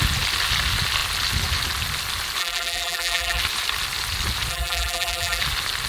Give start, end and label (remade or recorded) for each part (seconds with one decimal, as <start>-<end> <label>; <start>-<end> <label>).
0.0-2.4 recorded; 2.4-3.4 remade; 3.4-4.5 recorded; 4.5-5.4 remade; 5.4-5.9 recorded